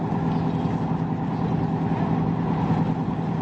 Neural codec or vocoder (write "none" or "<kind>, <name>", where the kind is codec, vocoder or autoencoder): none